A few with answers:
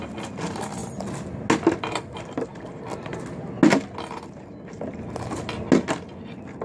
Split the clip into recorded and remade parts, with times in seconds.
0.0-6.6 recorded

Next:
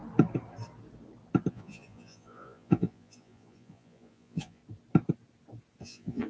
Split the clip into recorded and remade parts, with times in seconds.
0.0-1.5 recorded; 1.5-4.6 remade; 4.6-5.8 recorded; 5.8-6.3 remade

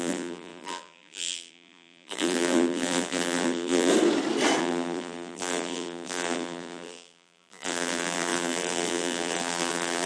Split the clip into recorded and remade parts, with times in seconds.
0.0-3.9 remade; 3.9-4.6 recorded; 4.6-10.1 remade

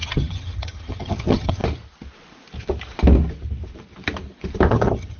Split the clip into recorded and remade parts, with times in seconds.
0.0-1.6 remade; 1.6-4.7 recorded; 4.7-5.2 remade

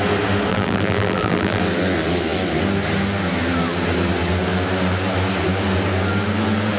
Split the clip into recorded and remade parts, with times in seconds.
0.0-0.5 recorded; 0.5-1.6 remade; 1.6-6.8 recorded

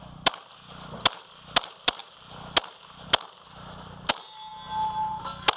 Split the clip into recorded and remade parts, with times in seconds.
0.0-5.6 recorded

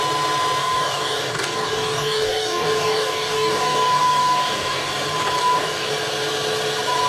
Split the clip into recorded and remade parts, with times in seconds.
0.0-0.6 recorded; 0.6-4.9 remade; 4.9-5.4 recorded; 5.4-5.9 remade; 5.9-7.1 recorded

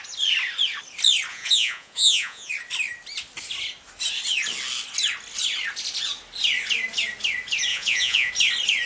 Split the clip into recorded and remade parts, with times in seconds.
0.0-1.3 recorded; 1.3-2.5 remade; 2.5-7.7 recorded; 7.7-8.3 remade; 8.3-8.9 recorded